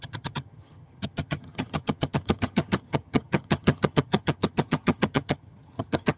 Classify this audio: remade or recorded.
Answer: remade